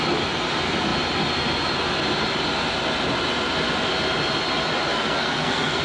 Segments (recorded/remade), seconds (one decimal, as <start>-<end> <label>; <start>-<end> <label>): 0.0-4.9 recorded; 4.9-5.8 remade